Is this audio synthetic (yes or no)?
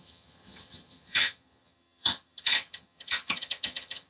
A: yes